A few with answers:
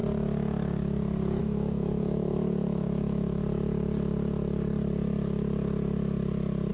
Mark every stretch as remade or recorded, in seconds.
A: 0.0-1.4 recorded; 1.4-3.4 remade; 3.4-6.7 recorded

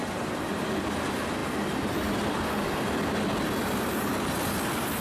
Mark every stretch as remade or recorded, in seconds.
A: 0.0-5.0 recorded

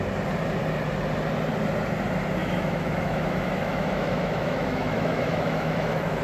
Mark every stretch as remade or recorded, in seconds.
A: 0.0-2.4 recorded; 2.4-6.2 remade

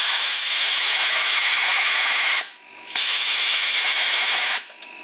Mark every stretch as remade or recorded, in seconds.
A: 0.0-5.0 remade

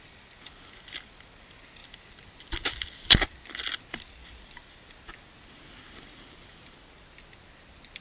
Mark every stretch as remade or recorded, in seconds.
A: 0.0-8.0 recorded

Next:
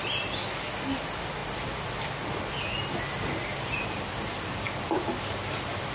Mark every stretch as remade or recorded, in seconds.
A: 0.0-5.9 recorded